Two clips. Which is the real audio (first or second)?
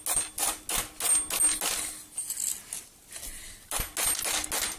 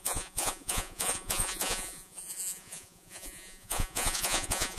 first